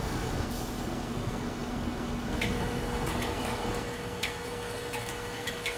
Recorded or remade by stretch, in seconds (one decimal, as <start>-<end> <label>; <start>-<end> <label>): 0.0-5.8 remade